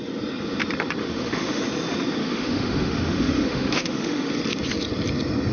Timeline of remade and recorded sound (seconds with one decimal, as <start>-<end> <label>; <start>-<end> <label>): 0.0-1.0 recorded; 1.0-1.6 remade; 1.6-2.2 recorded; 2.2-4.3 remade; 4.3-5.5 recorded